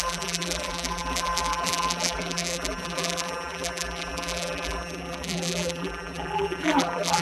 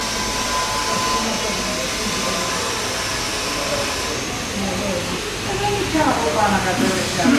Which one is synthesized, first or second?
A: first